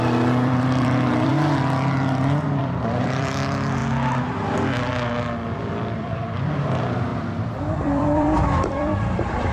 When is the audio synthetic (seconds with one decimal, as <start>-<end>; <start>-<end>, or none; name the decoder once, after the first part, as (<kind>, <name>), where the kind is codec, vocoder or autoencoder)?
0.0-1.3 (vocoder, BigVGAN v2); 2.6-3.8; 5.7-9.5